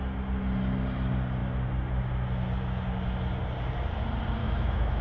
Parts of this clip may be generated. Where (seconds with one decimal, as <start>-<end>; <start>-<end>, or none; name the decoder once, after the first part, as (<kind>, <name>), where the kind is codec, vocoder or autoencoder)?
4.4-5.0 (autoencoder, DAC-VAE)